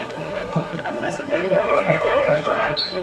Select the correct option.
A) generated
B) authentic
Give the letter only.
A